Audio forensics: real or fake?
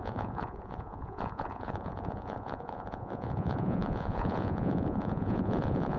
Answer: fake